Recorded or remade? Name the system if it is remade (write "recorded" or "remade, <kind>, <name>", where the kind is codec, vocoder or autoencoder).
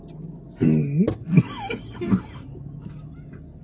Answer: recorded